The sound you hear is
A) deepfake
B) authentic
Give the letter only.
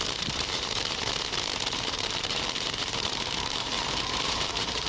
A